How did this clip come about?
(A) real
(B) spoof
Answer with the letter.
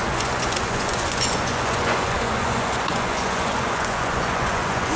B